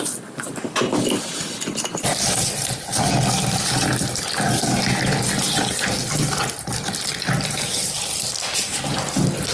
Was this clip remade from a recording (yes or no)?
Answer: no